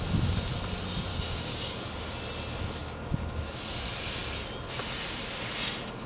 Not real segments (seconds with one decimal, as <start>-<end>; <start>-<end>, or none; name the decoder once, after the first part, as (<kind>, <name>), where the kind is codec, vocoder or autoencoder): 1.1-1.9 (codec, DAC); 2.8-3.6